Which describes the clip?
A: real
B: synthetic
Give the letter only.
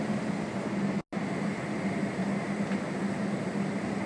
A